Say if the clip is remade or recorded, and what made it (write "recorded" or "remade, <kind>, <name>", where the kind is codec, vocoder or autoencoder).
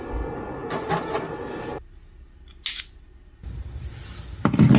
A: recorded